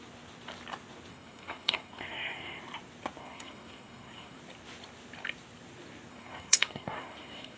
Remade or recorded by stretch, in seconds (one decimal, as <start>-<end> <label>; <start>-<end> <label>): 0.0-1.1 recorded; 1.1-2.6 remade; 2.6-3.2 recorded; 3.2-4.4 remade; 4.4-6.1 recorded; 6.1-7.6 remade